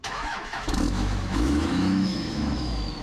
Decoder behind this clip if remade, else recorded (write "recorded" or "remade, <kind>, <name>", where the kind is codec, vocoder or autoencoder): remade, autoencoder, DAC-VAE